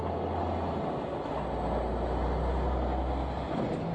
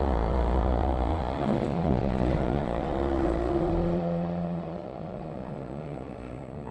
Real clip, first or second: first